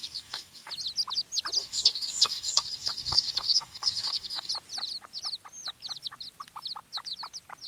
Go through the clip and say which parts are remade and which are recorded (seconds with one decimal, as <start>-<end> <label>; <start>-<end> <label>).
0.0-0.7 remade; 0.7-1.6 recorded; 1.6-4.5 remade; 4.5-7.7 recorded